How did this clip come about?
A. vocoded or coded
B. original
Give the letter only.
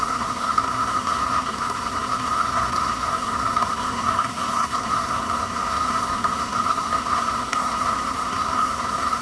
A